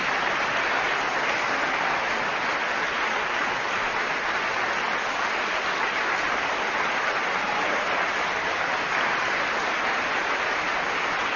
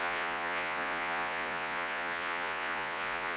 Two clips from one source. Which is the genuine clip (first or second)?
first